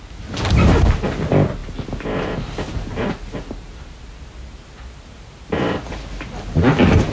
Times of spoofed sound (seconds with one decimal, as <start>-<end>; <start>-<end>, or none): none